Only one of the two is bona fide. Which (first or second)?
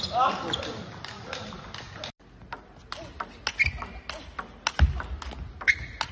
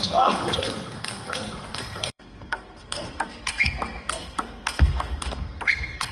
first